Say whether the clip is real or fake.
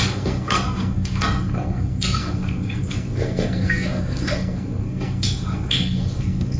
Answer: fake